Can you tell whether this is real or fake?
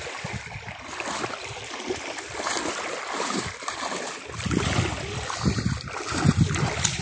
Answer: real